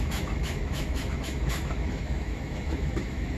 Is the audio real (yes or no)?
no